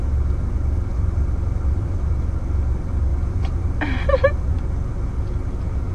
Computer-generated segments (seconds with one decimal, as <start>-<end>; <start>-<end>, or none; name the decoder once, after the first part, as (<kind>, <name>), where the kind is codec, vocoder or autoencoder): 0.9-2.1 (vocoder, BigVGAN v2); 3.1-3.8